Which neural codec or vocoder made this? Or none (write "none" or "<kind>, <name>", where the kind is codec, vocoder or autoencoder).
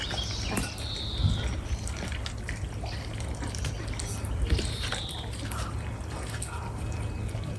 none